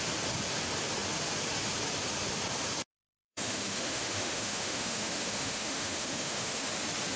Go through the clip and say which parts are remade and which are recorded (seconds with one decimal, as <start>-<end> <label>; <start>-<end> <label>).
0.0-2.9 recorded; 2.9-6.7 remade; 6.7-7.2 recorded